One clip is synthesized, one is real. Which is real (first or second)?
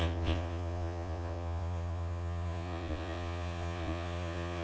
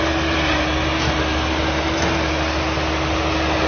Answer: second